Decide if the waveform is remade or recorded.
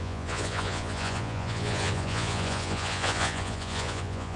remade